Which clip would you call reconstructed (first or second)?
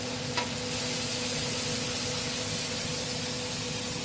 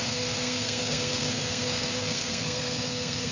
second